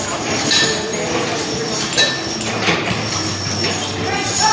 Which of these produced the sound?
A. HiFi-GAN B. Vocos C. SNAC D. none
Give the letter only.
D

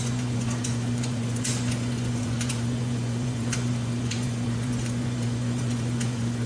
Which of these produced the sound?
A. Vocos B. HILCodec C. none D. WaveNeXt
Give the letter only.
A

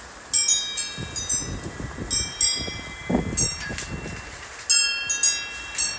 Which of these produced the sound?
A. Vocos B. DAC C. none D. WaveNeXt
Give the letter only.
C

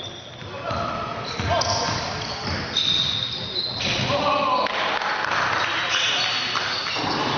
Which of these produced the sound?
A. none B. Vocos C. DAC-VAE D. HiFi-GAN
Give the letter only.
A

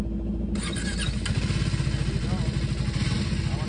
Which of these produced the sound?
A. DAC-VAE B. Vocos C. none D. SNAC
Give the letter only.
C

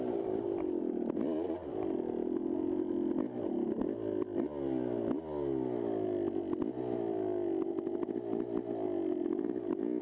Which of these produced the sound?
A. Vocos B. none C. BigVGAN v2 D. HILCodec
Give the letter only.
B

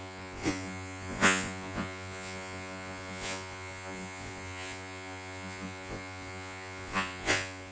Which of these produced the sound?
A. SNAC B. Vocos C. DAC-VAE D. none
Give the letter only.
B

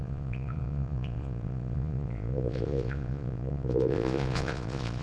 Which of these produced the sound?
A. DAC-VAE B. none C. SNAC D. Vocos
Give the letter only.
D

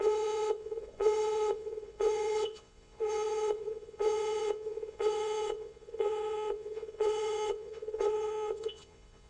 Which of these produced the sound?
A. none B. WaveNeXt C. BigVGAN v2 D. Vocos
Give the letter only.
D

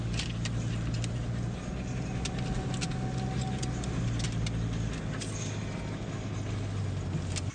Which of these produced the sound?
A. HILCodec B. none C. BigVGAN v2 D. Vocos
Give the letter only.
B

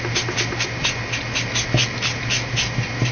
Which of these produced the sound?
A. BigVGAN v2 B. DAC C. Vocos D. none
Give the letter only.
D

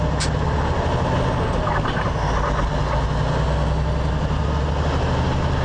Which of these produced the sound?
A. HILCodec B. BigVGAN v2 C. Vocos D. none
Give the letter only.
D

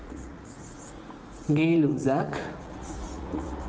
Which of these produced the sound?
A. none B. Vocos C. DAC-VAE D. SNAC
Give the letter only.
B